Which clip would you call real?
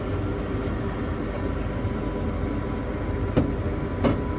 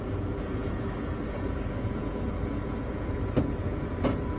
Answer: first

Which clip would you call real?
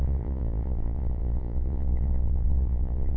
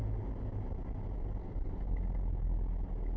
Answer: second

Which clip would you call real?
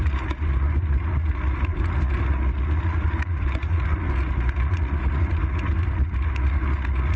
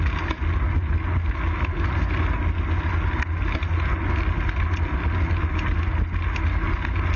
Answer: second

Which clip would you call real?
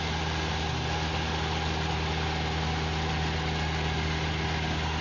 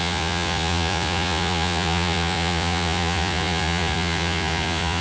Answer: first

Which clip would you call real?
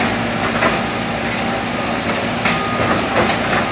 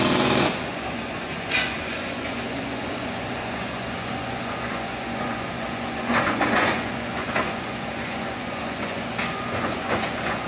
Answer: first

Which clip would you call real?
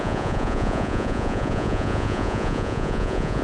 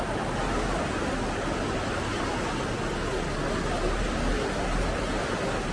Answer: second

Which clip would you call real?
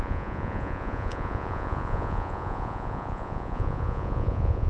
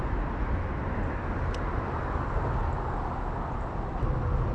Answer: second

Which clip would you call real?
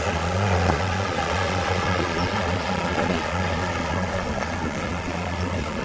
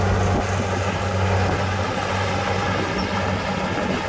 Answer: second